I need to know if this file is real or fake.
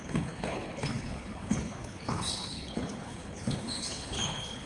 fake